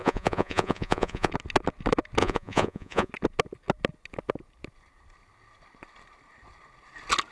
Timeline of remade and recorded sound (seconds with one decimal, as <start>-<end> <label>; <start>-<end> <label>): 0.0-1.3 remade; 1.3-2.2 recorded; 2.2-3.1 remade; 3.1-7.3 recorded